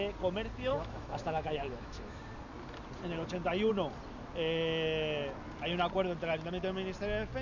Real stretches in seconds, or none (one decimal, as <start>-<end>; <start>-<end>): 0.0-0.7; 2.2-7.4